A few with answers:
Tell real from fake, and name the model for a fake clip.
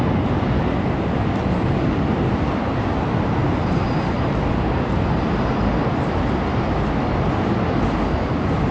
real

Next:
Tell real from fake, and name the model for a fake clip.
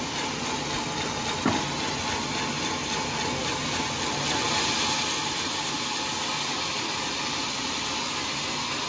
real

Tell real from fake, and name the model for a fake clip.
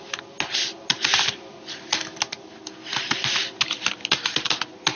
real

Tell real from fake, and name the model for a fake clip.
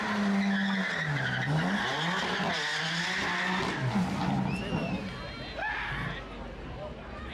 real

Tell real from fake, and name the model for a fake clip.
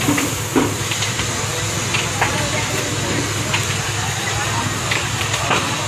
real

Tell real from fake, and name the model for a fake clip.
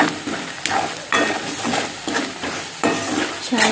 real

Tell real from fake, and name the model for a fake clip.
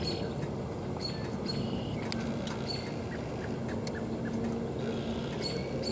real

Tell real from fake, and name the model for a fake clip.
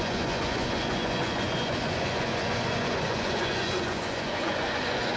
fake, vocoder, Vocos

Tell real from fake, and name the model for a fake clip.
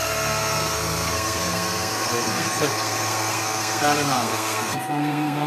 fake, codec, SNAC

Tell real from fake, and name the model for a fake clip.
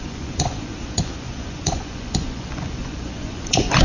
fake, vocoder, Vocos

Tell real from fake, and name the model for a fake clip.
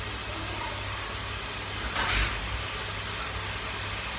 real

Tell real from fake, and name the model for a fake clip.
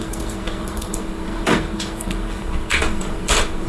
fake, codec, SNAC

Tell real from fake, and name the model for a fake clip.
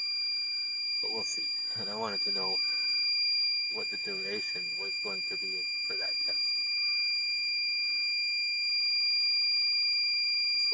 fake, autoencoder, DAC-VAE